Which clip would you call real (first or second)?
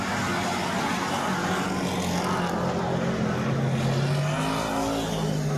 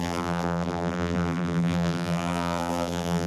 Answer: first